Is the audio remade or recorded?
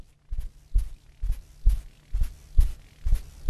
recorded